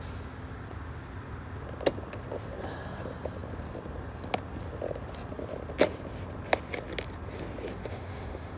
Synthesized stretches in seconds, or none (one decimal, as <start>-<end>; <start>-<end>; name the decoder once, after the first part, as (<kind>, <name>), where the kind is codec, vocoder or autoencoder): 7.8-8.6 (autoencoder, DAC-VAE)